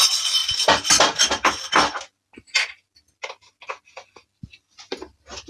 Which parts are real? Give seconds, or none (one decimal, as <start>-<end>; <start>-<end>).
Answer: 0.0-5.5